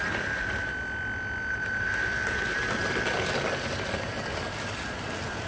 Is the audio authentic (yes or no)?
yes